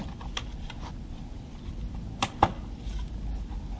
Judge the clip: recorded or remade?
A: recorded